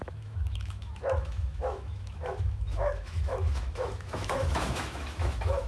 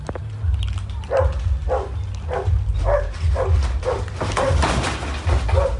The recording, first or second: second